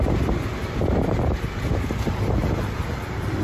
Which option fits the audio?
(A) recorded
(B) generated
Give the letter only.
A